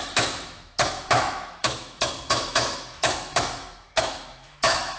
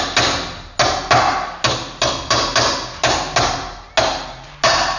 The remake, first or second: first